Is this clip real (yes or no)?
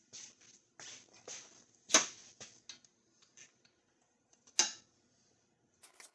yes